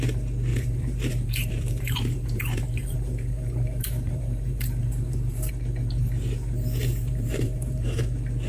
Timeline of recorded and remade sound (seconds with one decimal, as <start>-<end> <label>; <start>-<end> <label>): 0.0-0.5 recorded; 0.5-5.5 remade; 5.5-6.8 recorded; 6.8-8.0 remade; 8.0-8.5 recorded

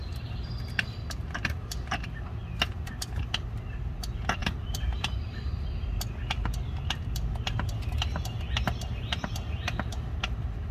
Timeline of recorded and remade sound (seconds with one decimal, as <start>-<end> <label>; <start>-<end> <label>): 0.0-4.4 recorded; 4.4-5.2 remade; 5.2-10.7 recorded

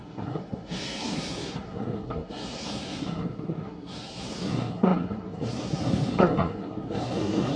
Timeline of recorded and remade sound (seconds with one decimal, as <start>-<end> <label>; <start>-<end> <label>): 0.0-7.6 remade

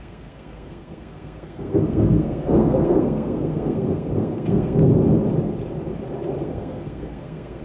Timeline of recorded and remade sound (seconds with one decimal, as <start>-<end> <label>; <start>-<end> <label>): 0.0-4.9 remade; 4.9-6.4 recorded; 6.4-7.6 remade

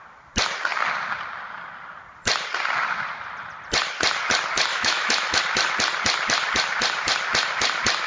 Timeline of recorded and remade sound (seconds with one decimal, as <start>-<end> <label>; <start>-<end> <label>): 0.0-4.7 recorded; 4.7-5.4 remade; 5.4-8.1 recorded

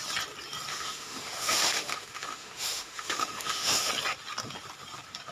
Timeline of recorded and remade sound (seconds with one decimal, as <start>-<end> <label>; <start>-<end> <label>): 0.0-0.7 recorded; 0.7-3.9 remade; 3.9-5.3 recorded

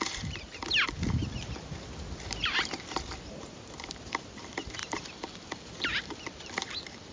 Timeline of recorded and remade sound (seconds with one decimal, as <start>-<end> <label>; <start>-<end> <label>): 0.0-0.6 remade; 0.6-2.3 recorded; 2.3-4.8 remade; 4.8-5.5 recorded; 5.5-7.1 remade